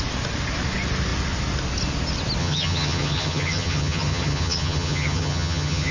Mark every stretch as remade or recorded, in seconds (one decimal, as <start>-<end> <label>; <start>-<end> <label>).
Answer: 0.0-2.4 recorded; 2.4-5.9 remade